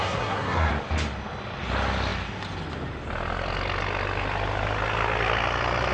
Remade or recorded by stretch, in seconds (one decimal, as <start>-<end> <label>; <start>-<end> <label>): 0.0-0.7 remade; 0.7-5.9 recorded